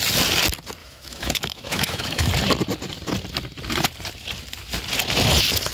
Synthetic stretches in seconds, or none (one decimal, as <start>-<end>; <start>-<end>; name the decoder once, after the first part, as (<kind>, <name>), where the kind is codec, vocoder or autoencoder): 0.8-2.3 (autoencoder, DAC-VAE)